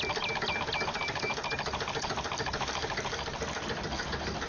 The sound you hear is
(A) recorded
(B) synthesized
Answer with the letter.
A